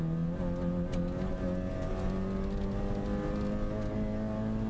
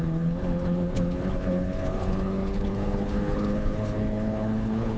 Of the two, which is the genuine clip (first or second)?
first